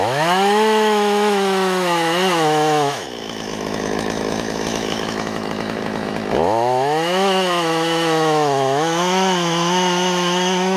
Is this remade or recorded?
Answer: remade